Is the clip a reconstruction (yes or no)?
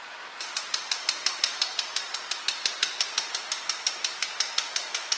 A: no